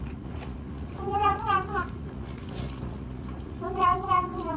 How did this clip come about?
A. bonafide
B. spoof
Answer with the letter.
B